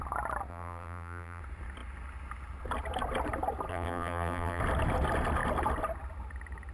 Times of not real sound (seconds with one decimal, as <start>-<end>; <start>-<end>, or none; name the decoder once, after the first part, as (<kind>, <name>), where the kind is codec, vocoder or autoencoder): 0.5-1.4 (vocoder, BigVGAN v2); 3.7-4.6